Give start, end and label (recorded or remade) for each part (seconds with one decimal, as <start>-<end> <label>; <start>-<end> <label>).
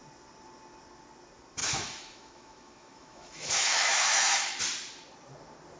0.0-1.6 recorded; 1.6-4.6 remade; 4.6-5.8 recorded